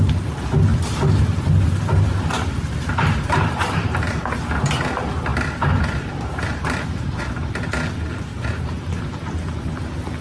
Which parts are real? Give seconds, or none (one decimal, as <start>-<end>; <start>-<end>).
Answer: 0.0-0.7; 4.3-5.3; 7.2-8.3; 9.0-10.2

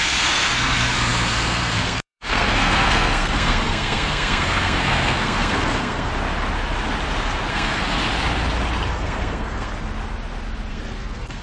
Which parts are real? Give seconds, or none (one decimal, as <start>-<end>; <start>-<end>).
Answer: 6.1-7.5; 8.0-8.9; 9.7-10.7